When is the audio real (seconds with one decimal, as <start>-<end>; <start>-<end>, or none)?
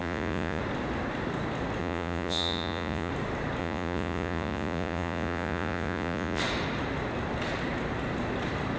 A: 0.6-1.8; 3.1-3.6; 6.4-8.8